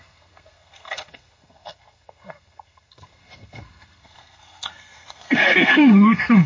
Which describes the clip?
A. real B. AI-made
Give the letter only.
B